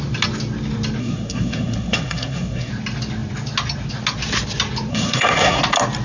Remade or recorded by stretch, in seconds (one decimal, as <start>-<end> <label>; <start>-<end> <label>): 0.0-1.0 recorded; 1.0-2.7 remade; 2.7-4.9 recorded; 4.9-5.6 remade; 5.6-6.0 recorded